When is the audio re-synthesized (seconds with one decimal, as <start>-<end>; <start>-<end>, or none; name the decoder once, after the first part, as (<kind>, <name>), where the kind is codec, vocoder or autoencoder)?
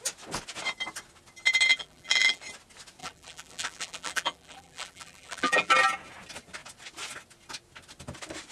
1.7-2.4 (vocoder, BigVGAN v2); 3.0-5.7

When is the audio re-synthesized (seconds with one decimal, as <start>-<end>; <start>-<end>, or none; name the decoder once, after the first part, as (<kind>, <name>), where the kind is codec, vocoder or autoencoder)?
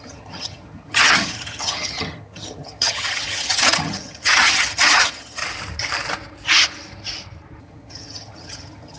0.0-5.4 (vocoder, HiFi-GAN); 7.6-9.0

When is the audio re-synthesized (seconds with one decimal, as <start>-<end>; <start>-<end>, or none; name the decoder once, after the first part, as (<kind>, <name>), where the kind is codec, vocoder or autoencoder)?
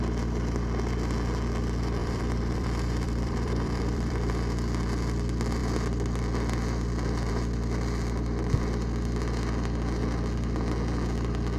2.0-4.3 (vocoder, BigVGAN v2)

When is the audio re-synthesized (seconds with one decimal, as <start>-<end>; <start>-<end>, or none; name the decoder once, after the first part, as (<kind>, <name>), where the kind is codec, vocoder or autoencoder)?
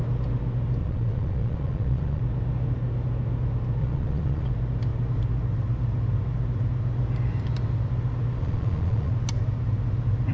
0.8-2.2 (vocoder, Vocos); 3.8-4.5; 8.4-9.1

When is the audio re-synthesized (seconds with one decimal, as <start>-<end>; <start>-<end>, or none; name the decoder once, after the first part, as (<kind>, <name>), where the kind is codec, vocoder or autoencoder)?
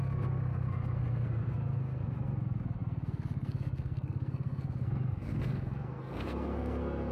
0.0-7.1 (codec, SNAC)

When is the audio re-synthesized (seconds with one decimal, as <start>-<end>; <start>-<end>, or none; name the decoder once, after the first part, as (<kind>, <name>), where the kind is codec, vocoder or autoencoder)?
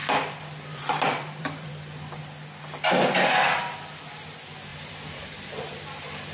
0.0-1.7 (vocoder, BigVGAN v2); 4.7-5.5